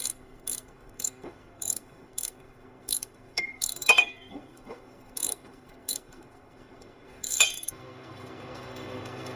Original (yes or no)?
no